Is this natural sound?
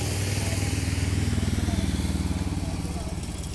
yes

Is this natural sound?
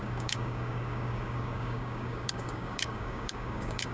no